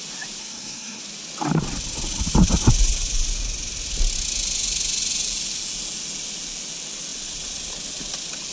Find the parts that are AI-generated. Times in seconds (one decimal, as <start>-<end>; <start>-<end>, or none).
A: 0.4-1.0